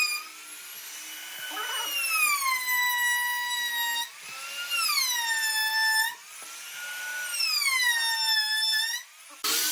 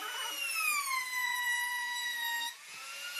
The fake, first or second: second